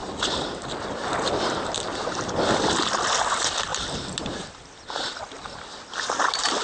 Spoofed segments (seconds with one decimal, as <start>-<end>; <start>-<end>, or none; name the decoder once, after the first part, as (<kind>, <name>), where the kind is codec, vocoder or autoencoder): none